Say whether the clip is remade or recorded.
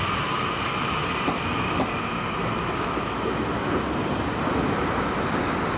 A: recorded